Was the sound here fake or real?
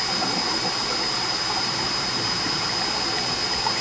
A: fake